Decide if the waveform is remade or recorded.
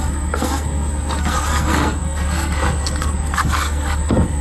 remade